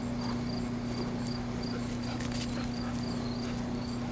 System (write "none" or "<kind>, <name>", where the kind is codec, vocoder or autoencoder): none